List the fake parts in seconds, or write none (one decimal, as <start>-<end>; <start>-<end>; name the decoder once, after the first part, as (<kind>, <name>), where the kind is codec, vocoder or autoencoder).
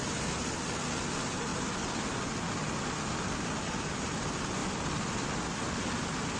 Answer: none